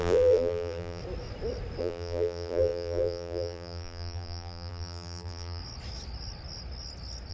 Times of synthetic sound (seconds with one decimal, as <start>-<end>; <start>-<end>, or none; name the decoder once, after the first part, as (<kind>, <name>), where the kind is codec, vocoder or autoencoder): 0.0-1.0 (vocoder, BigVGAN v2); 1.8-5.6